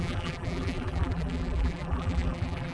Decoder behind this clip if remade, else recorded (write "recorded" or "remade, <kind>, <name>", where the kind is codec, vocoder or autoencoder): remade, vocoder, BigVGAN v2